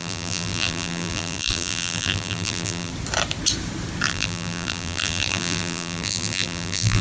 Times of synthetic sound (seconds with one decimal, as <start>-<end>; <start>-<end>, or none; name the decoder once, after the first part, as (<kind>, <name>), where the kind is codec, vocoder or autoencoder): 0.0-2.9 (vocoder, BigVGAN v2); 4.1-7.0